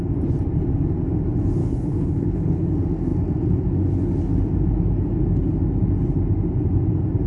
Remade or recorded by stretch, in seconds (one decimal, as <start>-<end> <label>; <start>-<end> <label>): 0.0-1.6 recorded; 1.6-2.7 remade; 2.7-7.3 recorded